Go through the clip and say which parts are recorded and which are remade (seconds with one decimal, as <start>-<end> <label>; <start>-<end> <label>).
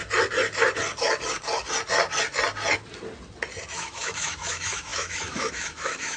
0.0-3.7 recorded; 3.7-6.2 remade